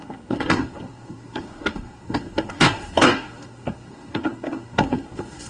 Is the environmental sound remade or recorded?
remade